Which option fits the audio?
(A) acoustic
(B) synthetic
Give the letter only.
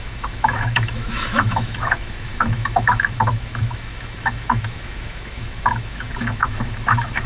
B